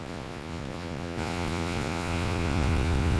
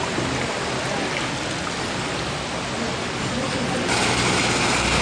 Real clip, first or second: second